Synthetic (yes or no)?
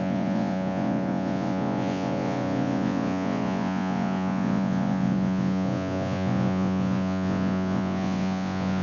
yes